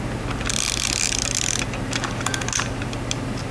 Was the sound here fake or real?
real